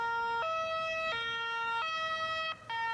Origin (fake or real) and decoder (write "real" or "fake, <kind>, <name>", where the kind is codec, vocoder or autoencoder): real